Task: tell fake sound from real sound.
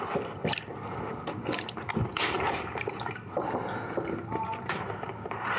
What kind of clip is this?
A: real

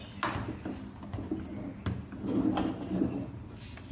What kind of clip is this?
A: real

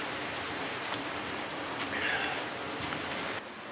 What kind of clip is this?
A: real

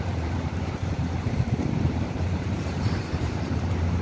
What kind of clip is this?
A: fake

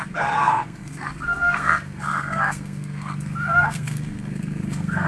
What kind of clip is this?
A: fake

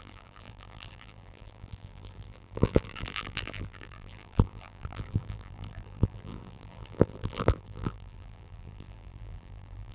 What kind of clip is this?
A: fake